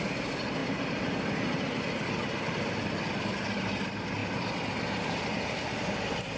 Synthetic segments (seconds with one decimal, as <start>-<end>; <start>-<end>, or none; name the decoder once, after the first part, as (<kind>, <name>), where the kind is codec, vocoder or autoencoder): none